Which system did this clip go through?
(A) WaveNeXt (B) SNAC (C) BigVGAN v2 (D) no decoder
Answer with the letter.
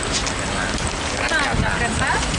D